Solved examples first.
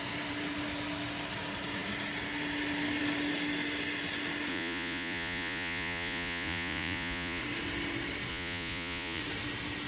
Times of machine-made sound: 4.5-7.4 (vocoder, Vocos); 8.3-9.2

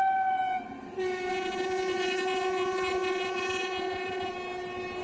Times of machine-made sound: 1.3-4.3 (vocoder, Vocos)

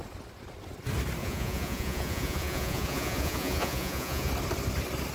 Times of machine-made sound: 1.2-4.3 (vocoder, Vocos)